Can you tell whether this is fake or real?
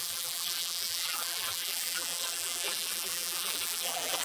fake